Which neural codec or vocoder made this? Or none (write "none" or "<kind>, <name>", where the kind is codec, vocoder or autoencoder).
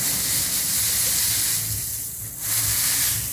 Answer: none